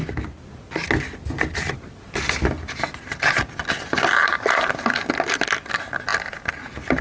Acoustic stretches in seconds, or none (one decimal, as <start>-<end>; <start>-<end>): 0.0-3.0